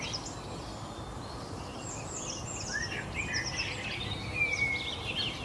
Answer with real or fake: real